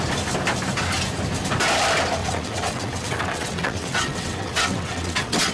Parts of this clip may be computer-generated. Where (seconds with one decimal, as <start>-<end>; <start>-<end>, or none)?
2.2-5.5